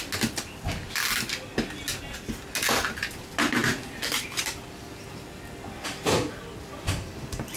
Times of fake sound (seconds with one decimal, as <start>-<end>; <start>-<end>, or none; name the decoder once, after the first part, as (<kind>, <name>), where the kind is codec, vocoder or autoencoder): none